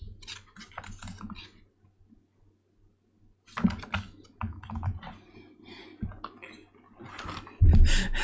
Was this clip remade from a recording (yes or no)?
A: no